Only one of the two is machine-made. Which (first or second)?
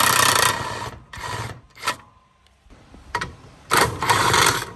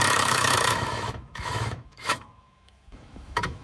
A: second